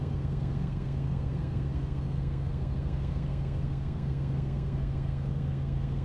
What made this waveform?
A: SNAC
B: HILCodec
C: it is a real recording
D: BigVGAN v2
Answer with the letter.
A